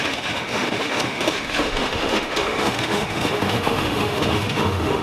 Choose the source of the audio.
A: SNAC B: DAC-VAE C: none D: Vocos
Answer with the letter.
B